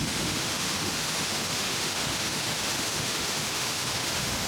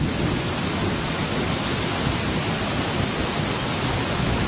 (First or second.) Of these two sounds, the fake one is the first